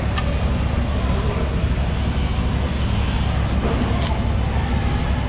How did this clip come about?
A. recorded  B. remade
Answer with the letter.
A